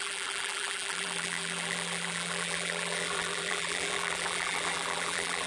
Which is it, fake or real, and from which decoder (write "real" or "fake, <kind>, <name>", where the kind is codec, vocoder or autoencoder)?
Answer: fake, vocoder, BigVGAN v2